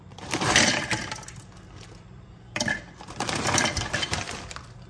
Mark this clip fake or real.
fake